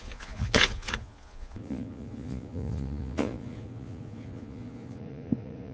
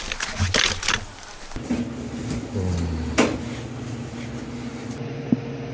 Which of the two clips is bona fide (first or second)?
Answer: second